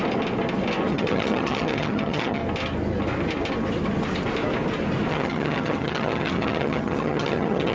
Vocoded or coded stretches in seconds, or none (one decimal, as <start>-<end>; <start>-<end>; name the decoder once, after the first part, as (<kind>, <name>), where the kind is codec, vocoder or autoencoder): 0.9-2.4 (vocoder, HiFi-GAN); 5.1-7.7